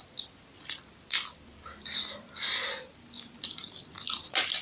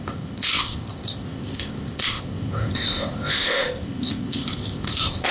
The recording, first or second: first